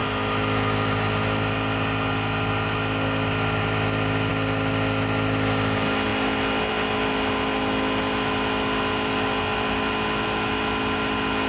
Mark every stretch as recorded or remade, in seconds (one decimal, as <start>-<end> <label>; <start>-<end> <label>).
0.0-11.5 recorded